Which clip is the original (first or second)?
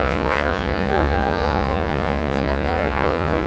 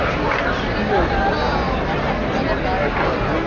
second